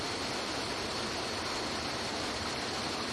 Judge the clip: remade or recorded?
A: recorded